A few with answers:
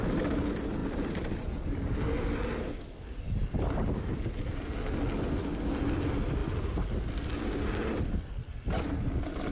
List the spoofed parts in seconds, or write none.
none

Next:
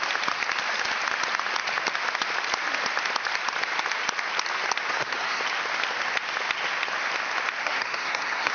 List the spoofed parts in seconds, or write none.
4.9-5.4; 7.6-8.5

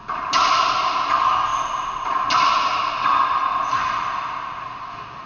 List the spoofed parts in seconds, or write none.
none

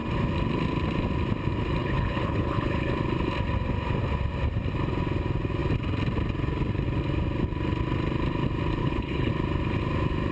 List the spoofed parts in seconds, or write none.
1.8-2.9; 8.8-9.3

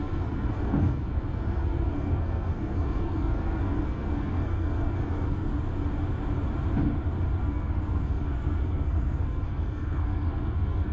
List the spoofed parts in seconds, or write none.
0.0-5.5; 7.4-10.9

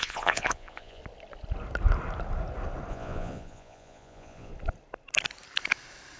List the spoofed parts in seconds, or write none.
0.0-1.0; 2.9-4.5

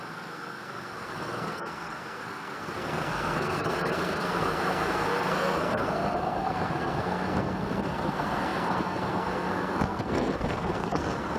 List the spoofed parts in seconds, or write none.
0.0-11.4

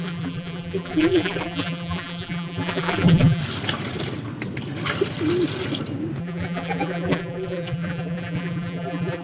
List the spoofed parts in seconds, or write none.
0.0-3.4; 6.2-9.2